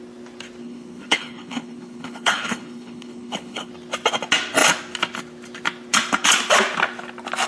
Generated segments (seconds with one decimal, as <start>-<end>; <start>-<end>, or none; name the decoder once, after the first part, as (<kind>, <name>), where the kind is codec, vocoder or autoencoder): 0.6-3.7 (codec, HILCodec)

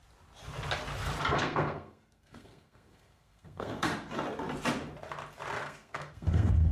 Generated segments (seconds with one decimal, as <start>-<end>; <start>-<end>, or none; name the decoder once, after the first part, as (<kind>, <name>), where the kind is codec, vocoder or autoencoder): 1.3-3.9 (codec, SNAC); 5.6-6.7

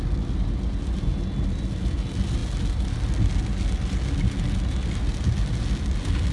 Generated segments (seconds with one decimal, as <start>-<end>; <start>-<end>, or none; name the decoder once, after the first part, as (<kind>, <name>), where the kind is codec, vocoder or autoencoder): none